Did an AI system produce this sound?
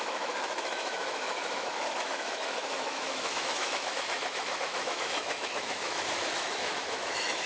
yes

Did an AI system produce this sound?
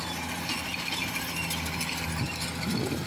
no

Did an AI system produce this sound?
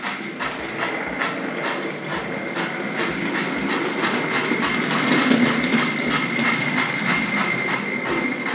no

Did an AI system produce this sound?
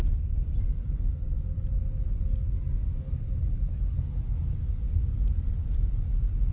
no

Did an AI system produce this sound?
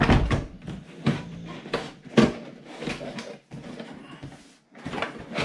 no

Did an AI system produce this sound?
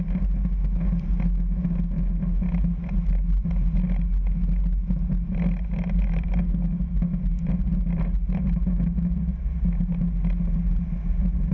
no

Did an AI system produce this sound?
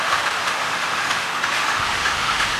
yes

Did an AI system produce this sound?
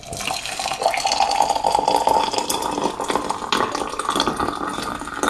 no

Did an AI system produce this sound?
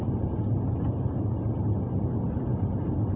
no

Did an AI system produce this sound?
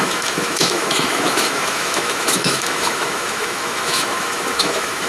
yes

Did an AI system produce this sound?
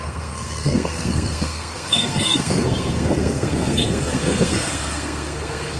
yes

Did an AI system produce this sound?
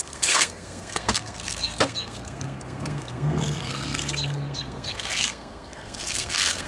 yes